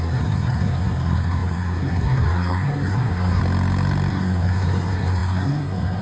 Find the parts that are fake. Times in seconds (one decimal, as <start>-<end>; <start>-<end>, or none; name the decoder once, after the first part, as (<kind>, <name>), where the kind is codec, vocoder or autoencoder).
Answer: 0.0-3.4 (codec, SNAC); 4.1-6.0